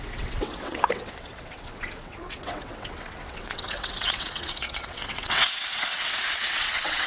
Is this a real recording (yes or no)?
no